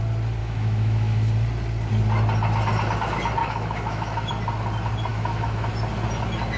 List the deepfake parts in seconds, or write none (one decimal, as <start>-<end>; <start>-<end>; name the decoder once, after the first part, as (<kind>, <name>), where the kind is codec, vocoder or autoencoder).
0.4-1.3 (autoencoder, DAC-VAE); 3.4-4.3; 5.1-5.7